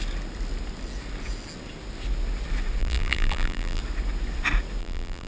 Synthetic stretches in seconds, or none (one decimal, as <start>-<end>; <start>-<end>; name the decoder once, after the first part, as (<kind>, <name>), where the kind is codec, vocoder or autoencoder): 2.8-3.8 (vocoder, BigVGAN v2); 4.8-5.3